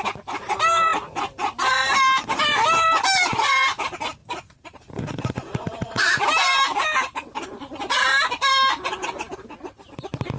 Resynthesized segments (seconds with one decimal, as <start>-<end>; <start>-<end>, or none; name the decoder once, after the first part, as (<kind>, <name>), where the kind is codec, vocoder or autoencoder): 4.2-6.1 (vocoder, Vocos)